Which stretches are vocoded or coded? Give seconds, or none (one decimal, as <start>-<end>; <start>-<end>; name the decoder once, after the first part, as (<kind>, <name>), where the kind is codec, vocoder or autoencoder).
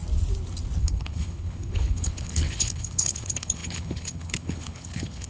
0.8-5.3 (codec, HILCodec)